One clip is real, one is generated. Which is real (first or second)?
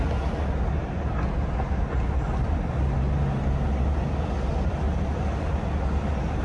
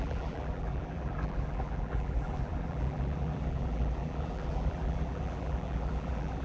first